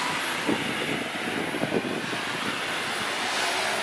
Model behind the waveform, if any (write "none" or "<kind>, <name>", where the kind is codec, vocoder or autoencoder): none